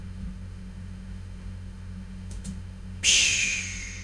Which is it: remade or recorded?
remade